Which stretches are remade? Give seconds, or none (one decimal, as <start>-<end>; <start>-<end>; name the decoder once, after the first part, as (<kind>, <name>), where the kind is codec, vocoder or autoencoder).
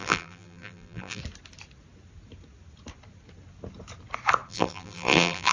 0.0-1.2 (vocoder, BigVGAN v2); 4.5-5.5